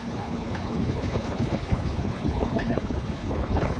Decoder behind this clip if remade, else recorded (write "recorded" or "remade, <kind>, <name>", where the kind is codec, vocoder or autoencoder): remade, codec, HILCodec